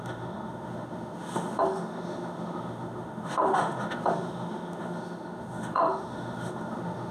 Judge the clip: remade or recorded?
remade